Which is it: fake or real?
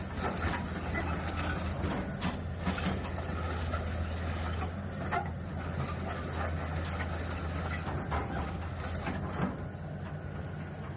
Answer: real